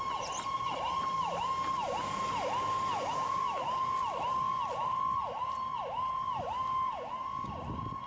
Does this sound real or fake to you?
real